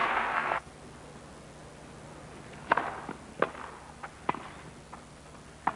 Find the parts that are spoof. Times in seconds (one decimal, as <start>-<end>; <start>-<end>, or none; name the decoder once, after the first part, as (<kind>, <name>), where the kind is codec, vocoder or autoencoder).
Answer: 0.0-0.7 (codec, SNAC)